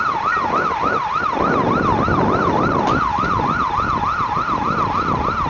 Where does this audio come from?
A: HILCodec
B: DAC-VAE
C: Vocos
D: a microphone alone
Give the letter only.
D